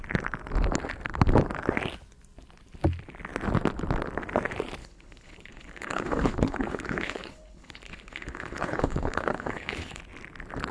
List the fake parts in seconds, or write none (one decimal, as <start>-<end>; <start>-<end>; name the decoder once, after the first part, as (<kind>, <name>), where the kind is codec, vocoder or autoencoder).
4.8-10.0 (codec, HILCodec)